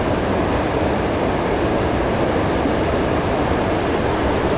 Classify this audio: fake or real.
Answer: real